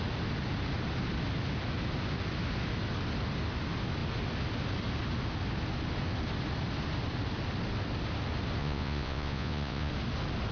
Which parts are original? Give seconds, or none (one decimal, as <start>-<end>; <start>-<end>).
0.0-8.6; 9.9-10.5